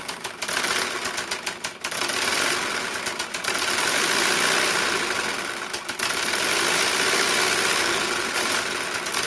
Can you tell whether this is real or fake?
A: real